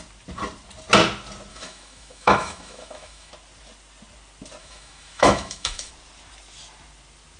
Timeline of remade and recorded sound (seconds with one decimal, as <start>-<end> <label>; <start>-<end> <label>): 0.0-1.5 recorded; 1.5-3.3 remade; 3.3-4.6 recorded; 4.6-5.9 remade; 5.9-7.4 recorded